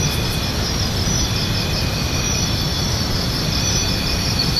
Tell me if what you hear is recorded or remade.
recorded